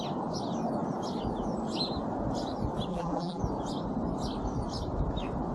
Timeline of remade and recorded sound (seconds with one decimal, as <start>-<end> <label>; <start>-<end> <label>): 0.0-2.9 recorded; 2.9-3.4 remade; 3.4-5.5 recorded